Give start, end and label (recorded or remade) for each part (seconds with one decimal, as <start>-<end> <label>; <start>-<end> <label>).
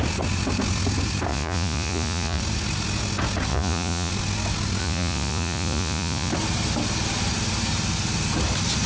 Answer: 0.0-1.3 recorded; 1.3-2.4 remade; 2.4-3.5 recorded; 3.5-4.1 remade; 4.1-4.8 recorded; 4.8-6.3 remade; 6.3-8.9 recorded